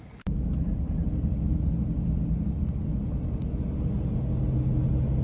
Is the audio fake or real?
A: real